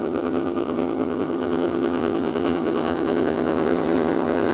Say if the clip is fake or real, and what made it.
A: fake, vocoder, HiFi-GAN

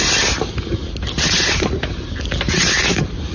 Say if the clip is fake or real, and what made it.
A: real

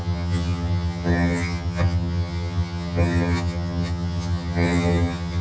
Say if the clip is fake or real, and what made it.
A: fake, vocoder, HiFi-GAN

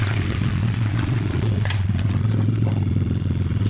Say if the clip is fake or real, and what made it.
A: fake, vocoder, Vocos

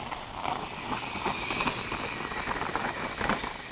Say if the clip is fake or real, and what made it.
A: real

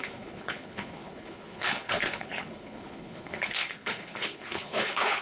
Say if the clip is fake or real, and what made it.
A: fake, codec, HILCodec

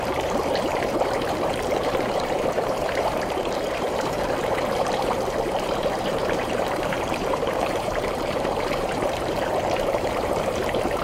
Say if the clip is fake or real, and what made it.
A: fake, vocoder, BigVGAN v2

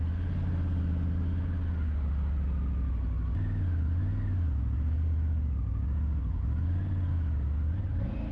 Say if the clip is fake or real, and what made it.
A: real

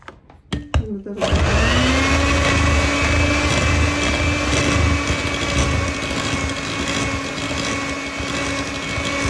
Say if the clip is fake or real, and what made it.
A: real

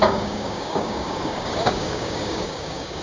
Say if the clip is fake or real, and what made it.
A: fake, codec, DAC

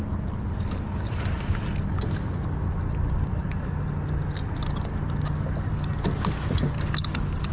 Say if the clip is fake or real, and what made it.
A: real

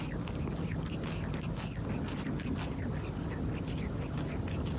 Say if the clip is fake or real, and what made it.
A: real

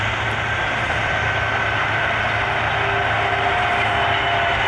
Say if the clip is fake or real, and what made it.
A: real